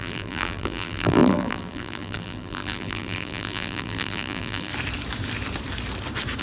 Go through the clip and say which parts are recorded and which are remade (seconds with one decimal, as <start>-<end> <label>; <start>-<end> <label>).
0.0-4.7 remade; 4.7-6.4 recorded